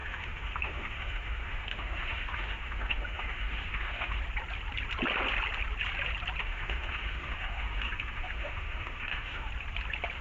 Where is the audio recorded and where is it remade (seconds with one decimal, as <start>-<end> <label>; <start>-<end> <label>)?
0.0-4.2 remade; 4.2-6.4 recorded; 6.4-9.5 remade; 9.5-10.2 recorded